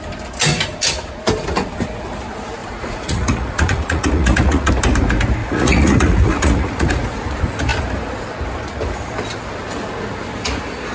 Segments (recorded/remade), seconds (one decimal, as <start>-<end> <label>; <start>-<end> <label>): 0.0-2.6 recorded; 2.6-4.7 remade; 4.7-5.4 recorded; 5.4-6.9 remade; 6.9-10.9 recorded